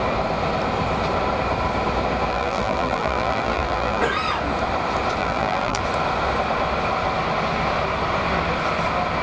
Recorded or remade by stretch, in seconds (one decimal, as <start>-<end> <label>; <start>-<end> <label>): 0.0-2.3 recorded; 2.3-4.0 remade; 4.0-5.2 recorded; 5.2-5.8 remade; 5.8-9.2 recorded